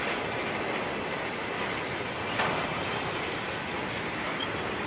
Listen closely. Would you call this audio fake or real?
real